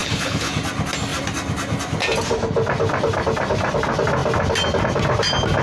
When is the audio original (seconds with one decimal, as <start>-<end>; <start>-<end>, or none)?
0.5-5.6

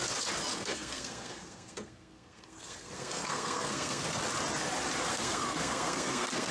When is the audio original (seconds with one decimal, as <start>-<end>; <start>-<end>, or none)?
0.0-0.5; 4.0-5.1

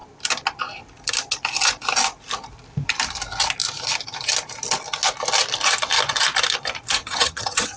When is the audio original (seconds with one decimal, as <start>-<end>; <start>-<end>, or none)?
0.0-7.0